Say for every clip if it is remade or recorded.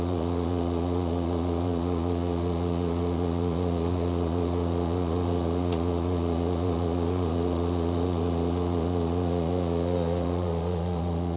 remade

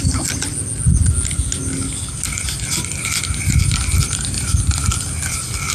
recorded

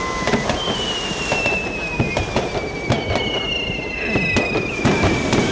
recorded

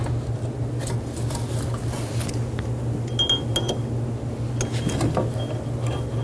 recorded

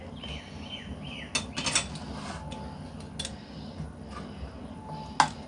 recorded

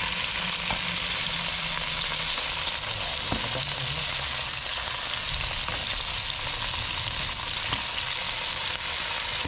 recorded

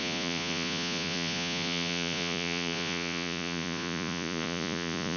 remade